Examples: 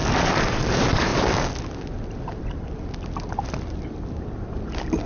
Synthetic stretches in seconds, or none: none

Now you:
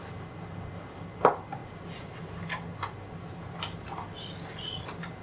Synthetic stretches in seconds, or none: none

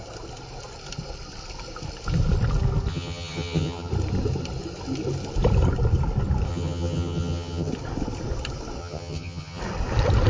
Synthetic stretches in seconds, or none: 2.9-3.9 (vocoder, HiFi-GAN); 6.5-7.7; 8.8-9.6

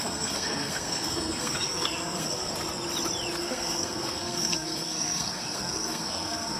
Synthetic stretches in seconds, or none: 0.0-2.5 (codec, SNAC); 3.4-6.6

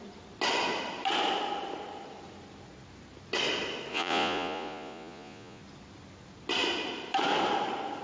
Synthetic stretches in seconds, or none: 3.9-5.6 (vocoder, Vocos)